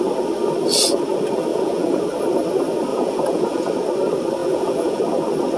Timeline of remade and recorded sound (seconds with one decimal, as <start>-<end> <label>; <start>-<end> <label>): 0.0-1.5 recorded; 1.5-2.0 remade; 2.0-2.9 recorded; 2.9-3.7 remade; 3.7-4.4 recorded; 4.4-5.0 remade; 5.0-5.6 recorded